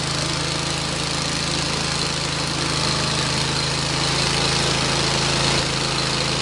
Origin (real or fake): real